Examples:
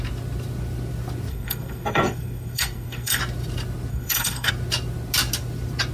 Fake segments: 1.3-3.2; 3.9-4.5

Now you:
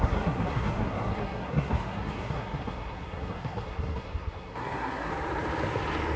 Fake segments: 0.0-5.1

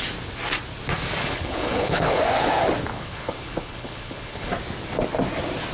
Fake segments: 1.2-2.2; 2.9-4.5

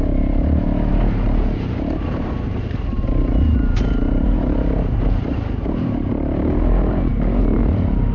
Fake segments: 0.0-8.1

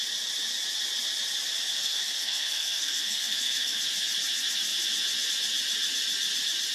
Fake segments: 1.8-3.8

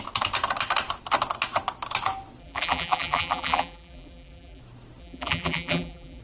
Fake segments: 2.4-4.6; 5.0-6.2

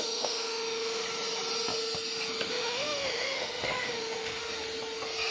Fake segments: 0.0-1.0; 2.5-4.4

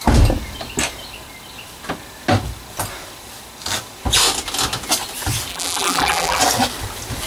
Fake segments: 5.5-6.4